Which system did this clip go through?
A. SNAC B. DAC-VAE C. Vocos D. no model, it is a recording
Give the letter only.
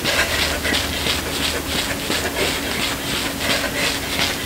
D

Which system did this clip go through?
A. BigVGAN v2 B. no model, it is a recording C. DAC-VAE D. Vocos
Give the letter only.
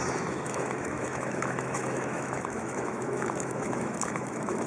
C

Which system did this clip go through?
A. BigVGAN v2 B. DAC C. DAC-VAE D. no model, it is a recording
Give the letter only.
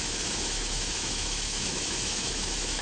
C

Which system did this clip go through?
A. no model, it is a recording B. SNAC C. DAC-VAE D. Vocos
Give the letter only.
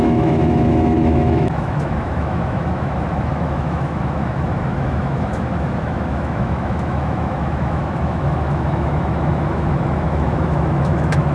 C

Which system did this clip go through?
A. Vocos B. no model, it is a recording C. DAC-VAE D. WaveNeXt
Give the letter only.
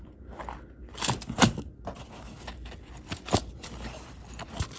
B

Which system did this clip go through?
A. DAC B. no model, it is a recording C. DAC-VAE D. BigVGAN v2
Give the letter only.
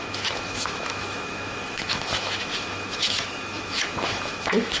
C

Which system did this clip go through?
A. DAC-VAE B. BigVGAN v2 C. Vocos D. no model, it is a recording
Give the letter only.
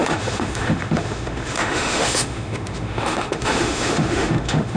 A